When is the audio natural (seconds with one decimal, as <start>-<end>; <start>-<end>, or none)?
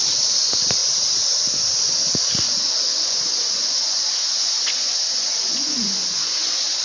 0.0-2.9